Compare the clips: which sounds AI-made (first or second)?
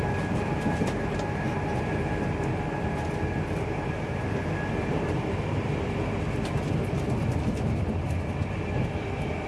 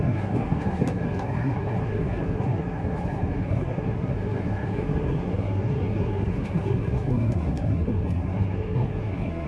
second